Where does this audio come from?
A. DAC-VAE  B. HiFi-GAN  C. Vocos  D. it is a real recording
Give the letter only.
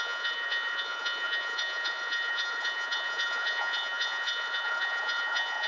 C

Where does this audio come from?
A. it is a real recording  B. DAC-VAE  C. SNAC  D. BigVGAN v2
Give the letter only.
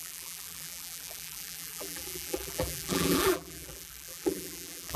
D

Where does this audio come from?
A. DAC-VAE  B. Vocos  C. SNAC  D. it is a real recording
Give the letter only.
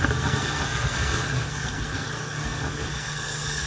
C